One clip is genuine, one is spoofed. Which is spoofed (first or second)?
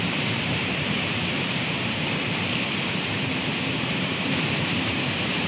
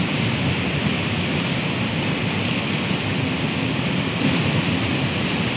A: first